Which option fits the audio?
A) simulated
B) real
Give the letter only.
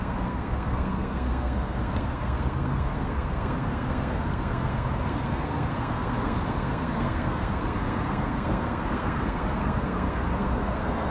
A